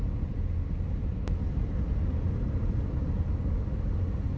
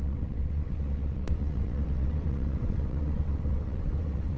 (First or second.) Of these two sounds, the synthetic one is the second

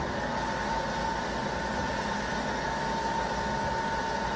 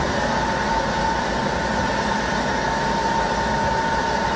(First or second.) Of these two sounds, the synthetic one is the second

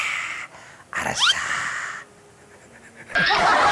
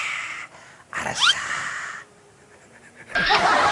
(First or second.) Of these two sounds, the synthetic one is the second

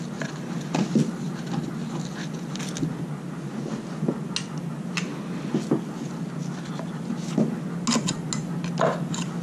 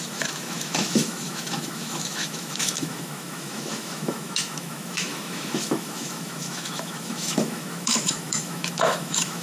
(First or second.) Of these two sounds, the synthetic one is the second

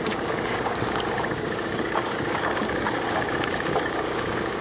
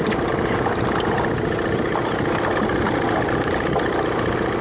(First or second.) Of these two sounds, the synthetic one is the first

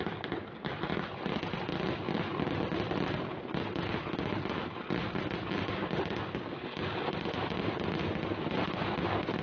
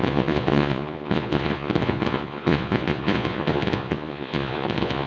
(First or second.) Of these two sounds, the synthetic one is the second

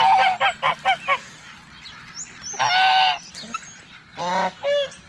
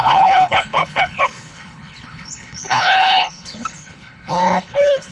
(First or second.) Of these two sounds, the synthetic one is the second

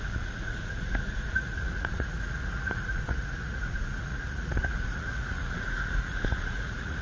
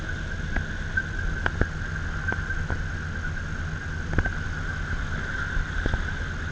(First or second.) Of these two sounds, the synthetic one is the first